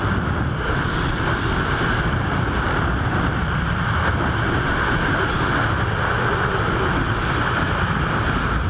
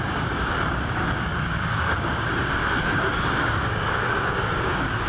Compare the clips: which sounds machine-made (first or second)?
second